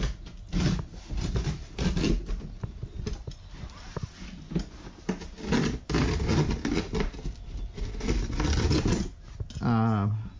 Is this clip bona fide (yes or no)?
yes